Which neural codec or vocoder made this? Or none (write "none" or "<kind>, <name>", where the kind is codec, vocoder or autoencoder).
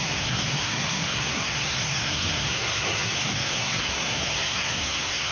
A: codec, SNAC